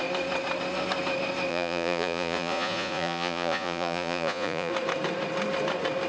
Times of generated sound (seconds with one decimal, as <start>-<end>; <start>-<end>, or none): 1.5-4.7